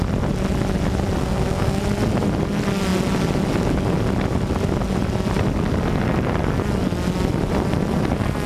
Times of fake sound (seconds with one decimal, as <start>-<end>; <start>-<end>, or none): 1.2-1.8